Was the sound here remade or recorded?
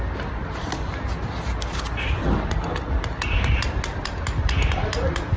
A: recorded